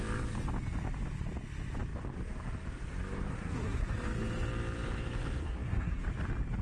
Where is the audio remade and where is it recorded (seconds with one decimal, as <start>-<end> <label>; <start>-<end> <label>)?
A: 0.0-3.3 recorded; 3.3-3.9 remade; 3.9-5.4 recorded; 5.4-6.0 remade; 6.0-6.6 recorded